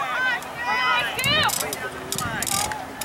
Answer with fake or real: real